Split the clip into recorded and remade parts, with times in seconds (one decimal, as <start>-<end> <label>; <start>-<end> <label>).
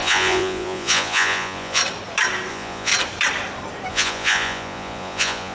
0.0-1.8 remade; 1.8-2.5 recorded; 2.5-2.9 remade; 2.9-3.9 recorded; 3.9-5.5 remade